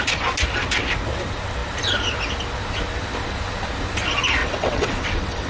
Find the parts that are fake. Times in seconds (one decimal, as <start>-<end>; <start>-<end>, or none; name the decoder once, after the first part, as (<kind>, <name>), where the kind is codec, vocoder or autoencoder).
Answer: 4.4-5.5 (vocoder, WaveNeXt)